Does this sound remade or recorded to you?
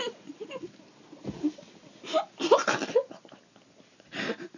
recorded